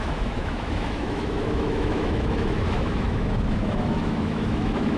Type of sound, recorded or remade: remade